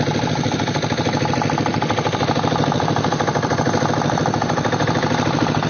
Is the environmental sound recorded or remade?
recorded